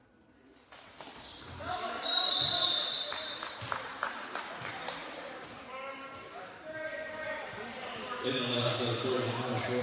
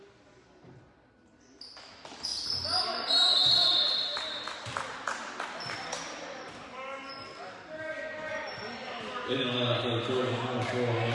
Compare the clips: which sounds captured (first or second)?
second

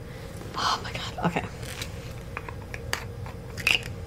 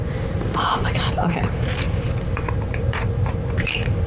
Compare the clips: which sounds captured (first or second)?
first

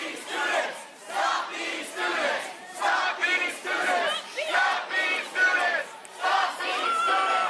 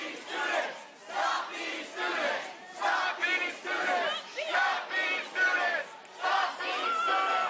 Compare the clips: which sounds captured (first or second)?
second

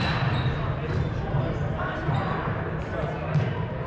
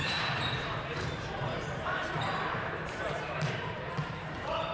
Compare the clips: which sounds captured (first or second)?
first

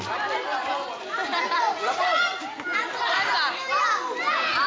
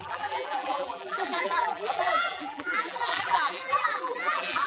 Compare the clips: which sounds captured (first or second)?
first